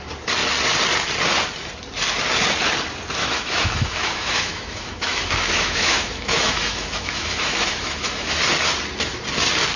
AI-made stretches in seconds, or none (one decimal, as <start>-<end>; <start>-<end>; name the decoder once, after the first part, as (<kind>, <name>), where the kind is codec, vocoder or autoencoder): 3.2-8.4 (autoencoder, DAC-VAE)

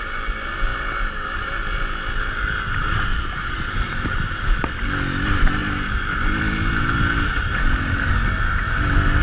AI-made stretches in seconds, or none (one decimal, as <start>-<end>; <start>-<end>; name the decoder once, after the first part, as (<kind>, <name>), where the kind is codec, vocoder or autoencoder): 0.7-3.5 (vocoder, BigVGAN v2); 5.6-6.7

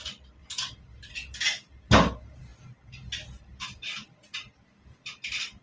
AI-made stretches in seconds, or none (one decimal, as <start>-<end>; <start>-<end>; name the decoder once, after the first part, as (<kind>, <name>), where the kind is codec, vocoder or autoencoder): 0.4-1.1 (vocoder, BigVGAN v2)

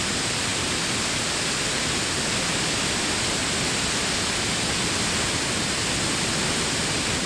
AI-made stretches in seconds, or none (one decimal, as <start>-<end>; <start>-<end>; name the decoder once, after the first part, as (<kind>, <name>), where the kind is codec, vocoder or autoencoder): none

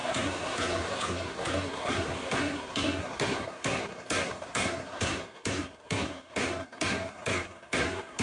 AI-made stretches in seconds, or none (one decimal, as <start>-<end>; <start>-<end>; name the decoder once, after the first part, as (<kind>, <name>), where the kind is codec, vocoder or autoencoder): 0.0-8.2 (codec, SNAC)